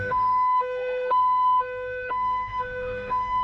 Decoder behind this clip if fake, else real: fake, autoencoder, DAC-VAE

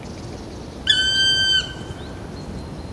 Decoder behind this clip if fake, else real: real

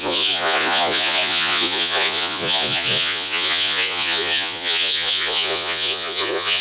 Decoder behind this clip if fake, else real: fake, vocoder, Vocos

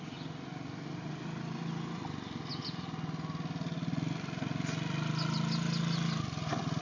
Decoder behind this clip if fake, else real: real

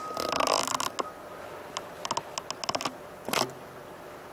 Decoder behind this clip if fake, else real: real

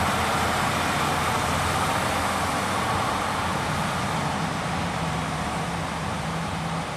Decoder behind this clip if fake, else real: real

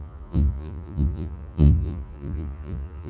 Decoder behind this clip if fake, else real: fake, vocoder, Vocos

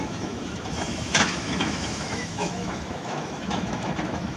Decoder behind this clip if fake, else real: fake, autoencoder, DAC-VAE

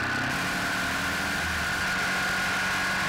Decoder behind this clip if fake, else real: real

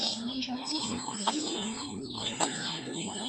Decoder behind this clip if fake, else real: fake, codec, SNAC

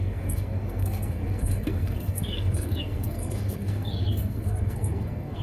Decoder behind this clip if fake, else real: fake, codec, SNAC